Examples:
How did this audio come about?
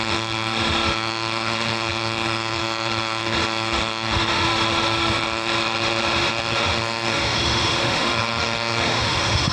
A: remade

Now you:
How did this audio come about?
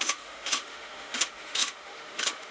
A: remade